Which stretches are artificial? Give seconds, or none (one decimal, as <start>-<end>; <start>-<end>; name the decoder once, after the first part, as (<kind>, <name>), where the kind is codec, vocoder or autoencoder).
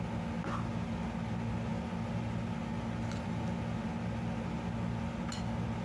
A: none